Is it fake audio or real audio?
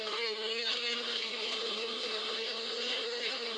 fake